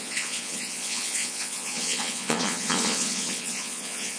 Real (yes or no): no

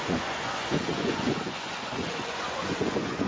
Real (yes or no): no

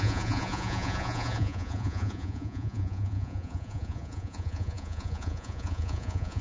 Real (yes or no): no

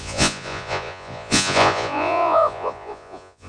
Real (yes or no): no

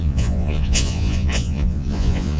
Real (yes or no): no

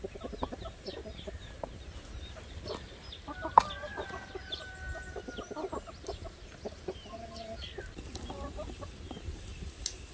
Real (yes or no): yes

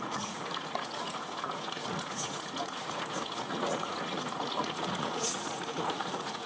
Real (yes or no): no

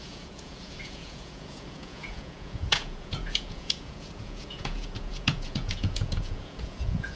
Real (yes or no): no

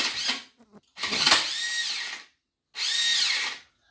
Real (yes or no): yes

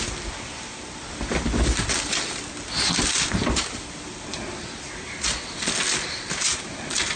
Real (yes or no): yes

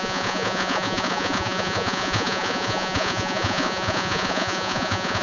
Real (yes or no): no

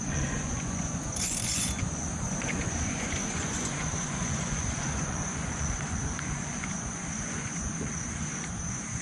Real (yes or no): no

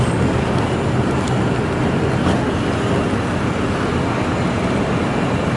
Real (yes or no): yes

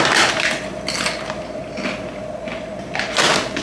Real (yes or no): yes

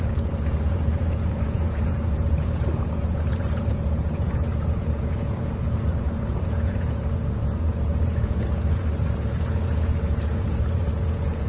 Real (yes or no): no